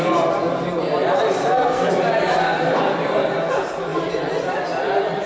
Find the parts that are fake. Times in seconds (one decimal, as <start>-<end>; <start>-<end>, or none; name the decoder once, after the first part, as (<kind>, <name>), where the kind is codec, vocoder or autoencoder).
1.4-1.9 (codec, SNAC)